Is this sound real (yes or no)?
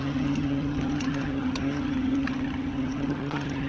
no